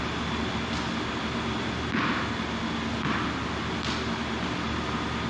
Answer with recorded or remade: recorded